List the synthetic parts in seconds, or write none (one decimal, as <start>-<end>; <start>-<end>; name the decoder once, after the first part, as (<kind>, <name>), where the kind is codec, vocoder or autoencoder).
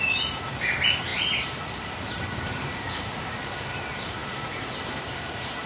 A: 0.0-5.7 (vocoder, BigVGAN v2)